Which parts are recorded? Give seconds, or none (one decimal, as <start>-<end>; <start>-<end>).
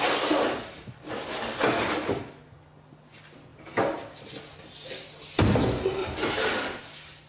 0.0-3.5; 4.5-6.0